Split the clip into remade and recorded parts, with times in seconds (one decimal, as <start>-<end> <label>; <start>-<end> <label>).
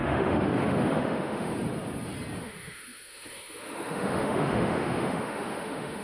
0.0-1.5 remade; 1.5-2.4 recorded; 2.4-6.0 remade